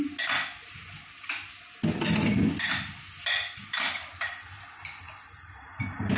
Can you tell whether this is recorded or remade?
recorded